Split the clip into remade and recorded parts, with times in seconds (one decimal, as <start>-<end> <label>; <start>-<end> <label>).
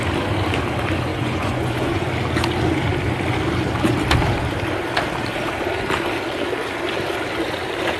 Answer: 0.0-1.1 recorded; 1.1-2.1 remade; 2.1-8.0 recorded